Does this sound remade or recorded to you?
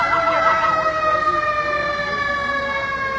recorded